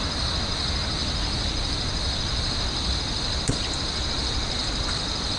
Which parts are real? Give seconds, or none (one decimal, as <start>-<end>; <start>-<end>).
0.0-5.4